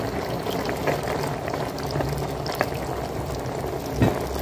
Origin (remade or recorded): recorded